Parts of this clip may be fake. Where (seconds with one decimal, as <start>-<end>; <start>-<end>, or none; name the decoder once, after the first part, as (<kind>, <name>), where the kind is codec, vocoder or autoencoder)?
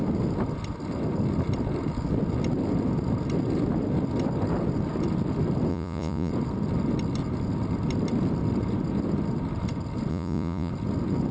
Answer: 5.7-6.3 (vocoder, Vocos); 10.1-10.7